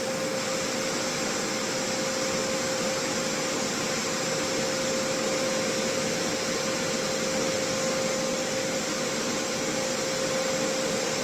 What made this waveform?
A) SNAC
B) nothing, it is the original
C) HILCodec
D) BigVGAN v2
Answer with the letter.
B